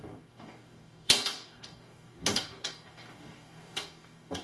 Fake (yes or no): yes